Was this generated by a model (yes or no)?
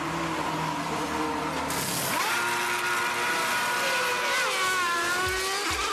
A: no